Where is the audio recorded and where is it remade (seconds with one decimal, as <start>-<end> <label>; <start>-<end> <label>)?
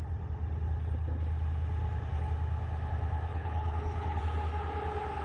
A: 0.0-3.3 recorded; 3.3-4.2 remade; 4.2-5.2 recorded